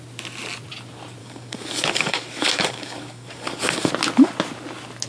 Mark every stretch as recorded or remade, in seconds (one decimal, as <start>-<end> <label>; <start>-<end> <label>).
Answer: 0.0-1.2 recorded; 1.2-3.9 remade; 3.9-5.1 recorded